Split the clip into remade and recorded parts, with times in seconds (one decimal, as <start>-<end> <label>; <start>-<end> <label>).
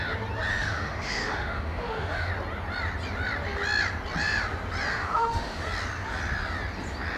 0.0-0.5 recorded; 0.5-2.3 remade; 2.3-4.9 recorded; 4.9-5.6 remade; 5.6-7.2 recorded